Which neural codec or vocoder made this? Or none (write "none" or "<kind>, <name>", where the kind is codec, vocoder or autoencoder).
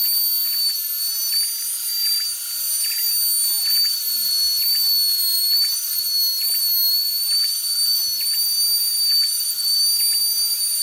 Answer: none